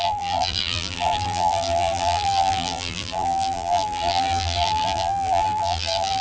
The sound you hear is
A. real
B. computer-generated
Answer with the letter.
B